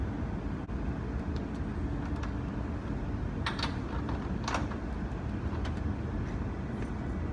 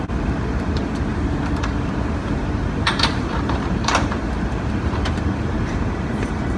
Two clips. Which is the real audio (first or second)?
first